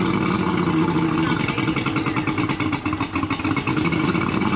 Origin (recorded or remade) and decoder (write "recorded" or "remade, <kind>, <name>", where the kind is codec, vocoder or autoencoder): recorded